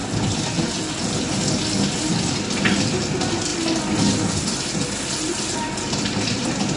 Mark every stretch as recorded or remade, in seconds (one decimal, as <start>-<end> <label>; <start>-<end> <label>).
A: 0.0-6.8 recorded